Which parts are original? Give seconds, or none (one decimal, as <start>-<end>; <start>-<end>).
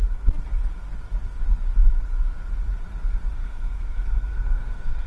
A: 0.0-3.4